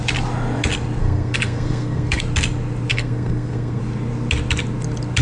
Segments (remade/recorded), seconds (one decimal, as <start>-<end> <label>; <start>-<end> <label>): 0.0-1.0 recorded; 1.0-2.2 remade; 2.2-2.9 recorded; 2.9-3.8 remade; 3.8-5.2 recorded